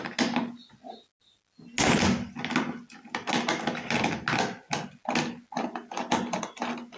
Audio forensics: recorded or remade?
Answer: recorded